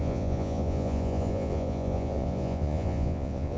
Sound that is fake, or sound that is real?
fake